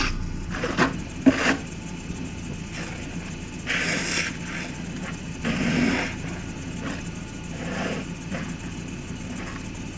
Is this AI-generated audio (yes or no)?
no